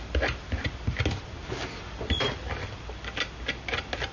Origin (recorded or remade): recorded